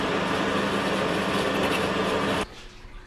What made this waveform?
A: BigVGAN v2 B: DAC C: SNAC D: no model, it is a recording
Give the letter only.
D